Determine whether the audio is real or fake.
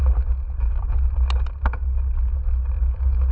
real